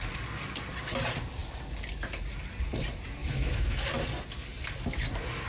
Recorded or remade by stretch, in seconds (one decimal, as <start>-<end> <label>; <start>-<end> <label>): 0.0-3.2 recorded; 3.2-3.9 remade; 3.9-5.5 recorded